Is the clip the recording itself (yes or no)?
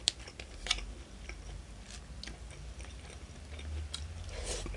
yes